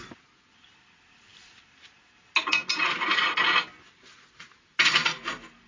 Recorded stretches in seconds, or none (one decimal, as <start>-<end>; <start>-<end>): 0.0-5.7